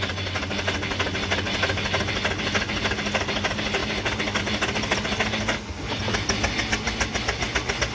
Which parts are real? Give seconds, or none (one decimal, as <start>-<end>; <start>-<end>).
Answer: 0.0-7.9